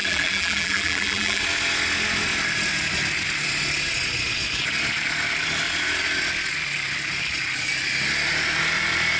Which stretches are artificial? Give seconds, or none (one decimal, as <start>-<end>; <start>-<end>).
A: 0.0-1.4